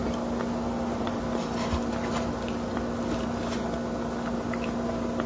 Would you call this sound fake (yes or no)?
no